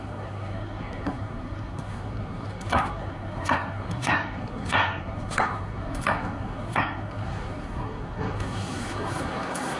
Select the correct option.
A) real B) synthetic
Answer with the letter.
B